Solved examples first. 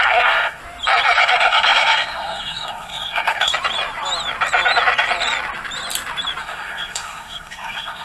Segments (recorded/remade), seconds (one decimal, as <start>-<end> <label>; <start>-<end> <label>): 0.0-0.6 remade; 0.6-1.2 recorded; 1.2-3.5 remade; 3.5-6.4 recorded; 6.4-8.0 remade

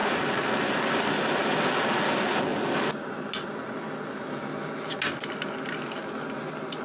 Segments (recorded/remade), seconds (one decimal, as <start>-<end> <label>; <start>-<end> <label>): 0.0-6.8 recorded

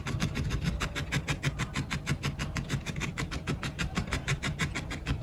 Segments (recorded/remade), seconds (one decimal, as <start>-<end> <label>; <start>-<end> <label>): 0.0-3.1 recorded; 3.1-4.7 remade; 4.7-5.2 recorded

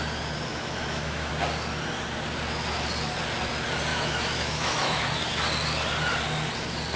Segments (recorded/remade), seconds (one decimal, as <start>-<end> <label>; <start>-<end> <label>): 0.0-0.5 recorded; 0.5-1.3 remade; 1.3-3.9 recorded; 3.9-5.0 remade; 5.0-7.0 recorded